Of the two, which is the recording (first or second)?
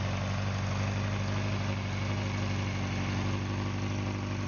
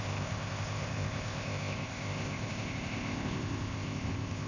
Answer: first